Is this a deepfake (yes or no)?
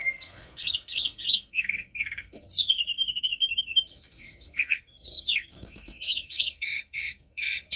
yes